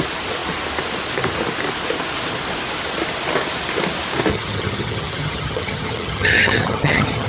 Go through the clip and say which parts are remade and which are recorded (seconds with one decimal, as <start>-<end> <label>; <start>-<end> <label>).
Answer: 0.0-4.3 recorded; 4.3-7.3 remade